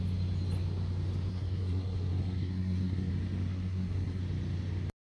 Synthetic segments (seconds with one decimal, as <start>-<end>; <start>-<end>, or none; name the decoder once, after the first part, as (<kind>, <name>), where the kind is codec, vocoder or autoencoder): 1.3-3.1 (codec, SNAC); 3.5-4.2

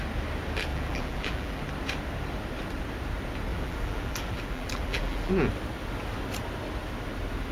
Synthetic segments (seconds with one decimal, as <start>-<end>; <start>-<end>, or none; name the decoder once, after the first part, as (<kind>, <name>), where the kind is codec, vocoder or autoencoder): 0.7-1.6 (vocoder, BigVGAN v2); 3.5-5.3

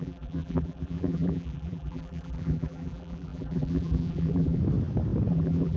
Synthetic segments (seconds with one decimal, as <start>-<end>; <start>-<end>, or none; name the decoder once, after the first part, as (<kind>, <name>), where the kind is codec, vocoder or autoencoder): 0.0-4.6 (vocoder, BigVGAN v2); 5.3-5.8

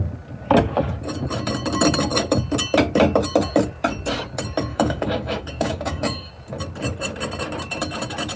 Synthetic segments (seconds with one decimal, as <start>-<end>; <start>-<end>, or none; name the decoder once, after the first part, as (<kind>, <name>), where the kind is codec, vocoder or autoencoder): 4.7-6.3 (codec, DAC)